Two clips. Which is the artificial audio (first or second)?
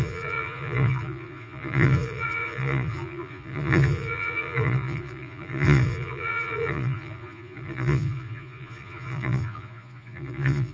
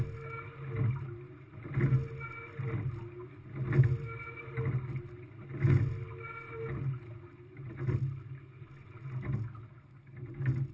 first